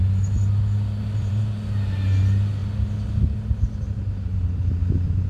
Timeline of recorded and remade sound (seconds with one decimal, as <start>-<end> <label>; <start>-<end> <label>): 0.0-1.0 recorded; 1.0-1.5 remade; 1.5-5.3 recorded